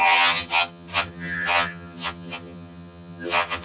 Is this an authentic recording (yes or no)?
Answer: no